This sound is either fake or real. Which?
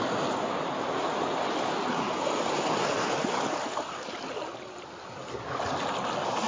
real